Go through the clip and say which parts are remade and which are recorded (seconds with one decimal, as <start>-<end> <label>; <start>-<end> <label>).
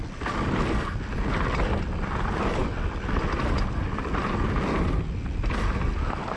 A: 0.0-6.4 recorded